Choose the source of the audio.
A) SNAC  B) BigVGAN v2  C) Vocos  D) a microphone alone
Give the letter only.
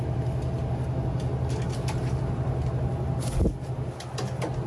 D